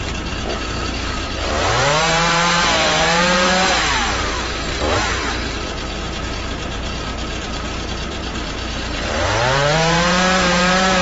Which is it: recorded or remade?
remade